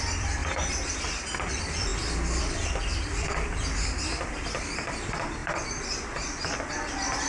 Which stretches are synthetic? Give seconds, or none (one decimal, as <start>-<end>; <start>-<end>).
0.0-0.4; 1.5-1.9; 2.4-5.4; 6.7-7.3